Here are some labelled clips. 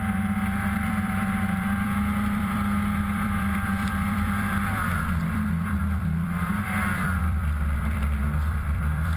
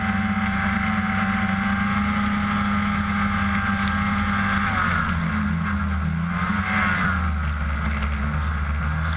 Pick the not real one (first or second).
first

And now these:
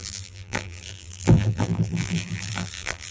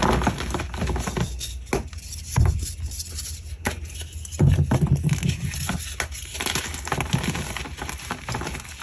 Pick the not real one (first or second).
first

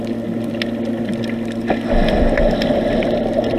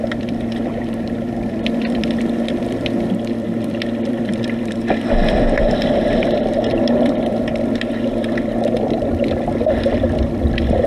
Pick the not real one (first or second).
second